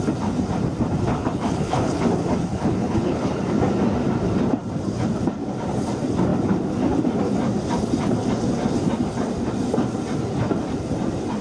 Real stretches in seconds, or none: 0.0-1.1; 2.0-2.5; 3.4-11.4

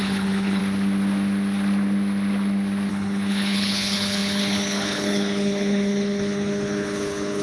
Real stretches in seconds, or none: 0.6-2.9

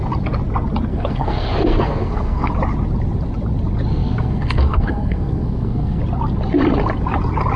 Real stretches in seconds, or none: 0.0-0.9; 2.5-3.9; 6.0-7.6

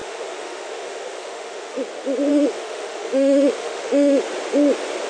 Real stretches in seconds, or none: 1.8-2.3; 4.2-5.1